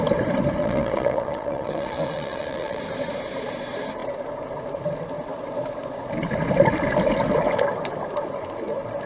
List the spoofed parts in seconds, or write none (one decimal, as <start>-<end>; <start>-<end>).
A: 0.6-2.8